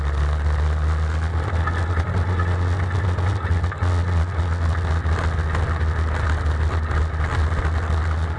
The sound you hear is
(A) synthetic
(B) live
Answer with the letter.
B